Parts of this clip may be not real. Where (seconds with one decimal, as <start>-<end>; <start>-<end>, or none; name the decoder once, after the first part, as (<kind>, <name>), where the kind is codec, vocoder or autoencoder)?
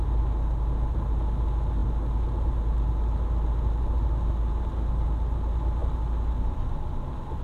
none